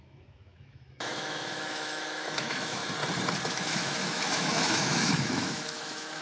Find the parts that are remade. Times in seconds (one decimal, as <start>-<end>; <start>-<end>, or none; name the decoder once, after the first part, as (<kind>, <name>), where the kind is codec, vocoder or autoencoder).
0.0-2.8 (autoencoder, DAC-VAE); 3.5-6.2